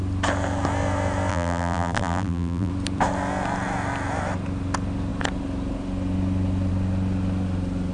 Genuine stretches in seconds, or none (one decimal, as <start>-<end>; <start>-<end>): 0.0-1.3; 2.7-7.9